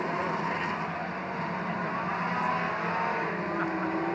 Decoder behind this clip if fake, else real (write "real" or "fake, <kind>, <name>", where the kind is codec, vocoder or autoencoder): real